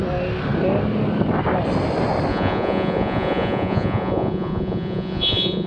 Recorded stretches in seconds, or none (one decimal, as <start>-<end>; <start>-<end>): 0.0-2.3